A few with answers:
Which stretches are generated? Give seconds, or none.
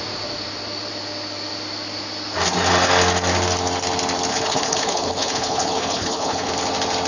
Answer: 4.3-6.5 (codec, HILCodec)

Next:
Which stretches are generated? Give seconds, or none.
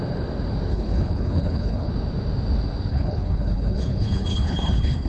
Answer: 0.7-1.9 (codec, HILCodec); 2.9-5.1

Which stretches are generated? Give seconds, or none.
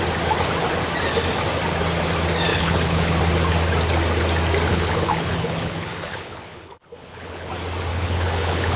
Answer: 2.5-3.2 (codec, HILCodec); 4.7-7.5; 7.9-8.8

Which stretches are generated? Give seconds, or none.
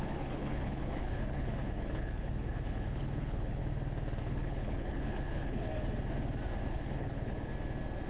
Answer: 0.0-3.6 (codec, HILCodec); 4.2-5.7; 6.7-7.5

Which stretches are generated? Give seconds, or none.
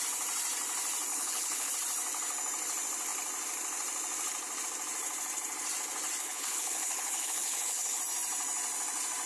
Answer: 1.1-1.7 (codec, HILCodec); 6.2-8.0